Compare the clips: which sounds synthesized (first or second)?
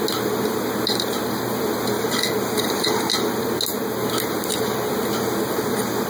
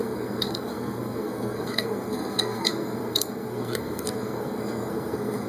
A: second